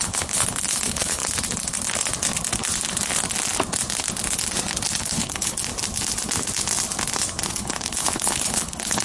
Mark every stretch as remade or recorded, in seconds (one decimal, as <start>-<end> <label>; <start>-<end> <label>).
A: 0.0-1.2 remade; 1.2-5.0 recorded; 5.0-5.7 remade; 5.7-7.5 recorded; 7.5-9.0 remade